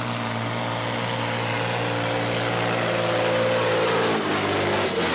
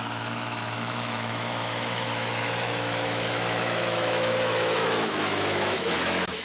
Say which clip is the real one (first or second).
first